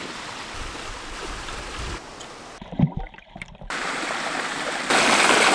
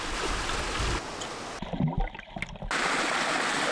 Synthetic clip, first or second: first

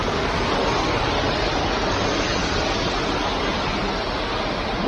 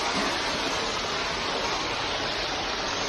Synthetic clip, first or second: second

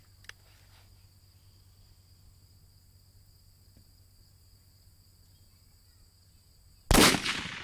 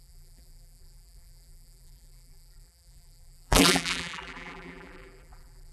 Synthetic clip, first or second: second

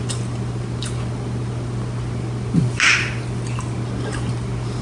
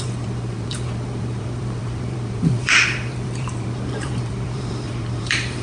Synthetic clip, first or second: second